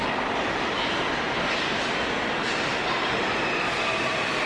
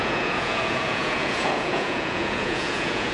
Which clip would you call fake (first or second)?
second